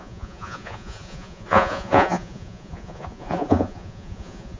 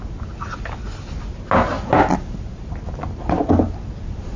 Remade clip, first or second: first